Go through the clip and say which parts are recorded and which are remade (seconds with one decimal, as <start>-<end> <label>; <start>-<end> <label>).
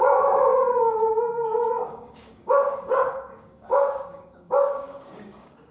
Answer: 0.0-0.5 remade; 0.5-1.7 recorded; 1.7-5.7 remade